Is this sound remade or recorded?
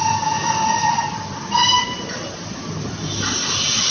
remade